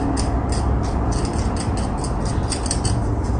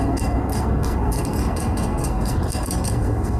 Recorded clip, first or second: first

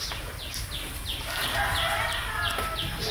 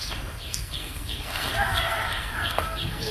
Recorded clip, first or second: first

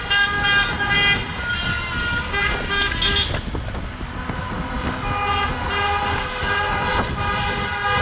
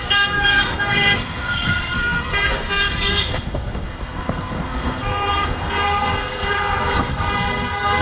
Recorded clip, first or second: first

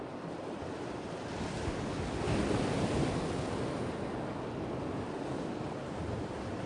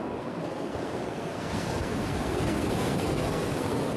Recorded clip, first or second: first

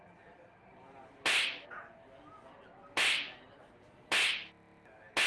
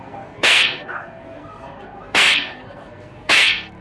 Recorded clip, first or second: first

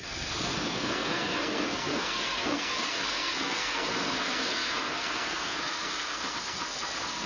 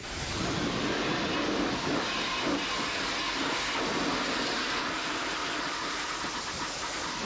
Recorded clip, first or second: second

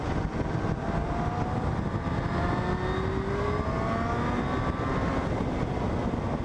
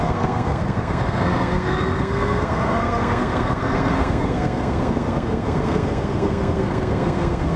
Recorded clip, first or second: first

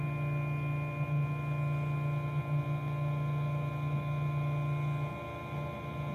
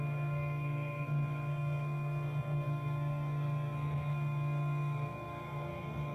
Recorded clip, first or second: first